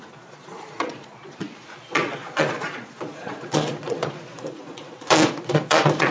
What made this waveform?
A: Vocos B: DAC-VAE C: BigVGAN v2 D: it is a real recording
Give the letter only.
A